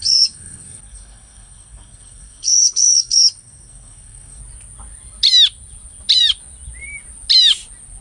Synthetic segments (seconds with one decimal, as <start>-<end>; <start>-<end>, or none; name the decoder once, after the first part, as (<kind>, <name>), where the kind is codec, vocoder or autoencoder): 0.0-4.4 (codec, SNAC)